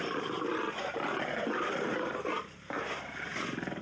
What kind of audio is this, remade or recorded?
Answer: recorded